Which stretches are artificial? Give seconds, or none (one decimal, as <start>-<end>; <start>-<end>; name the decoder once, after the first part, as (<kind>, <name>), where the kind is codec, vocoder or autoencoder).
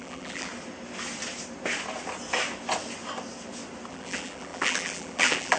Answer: 0.0-0.5 (vocoder, BigVGAN v2); 3.9-5.6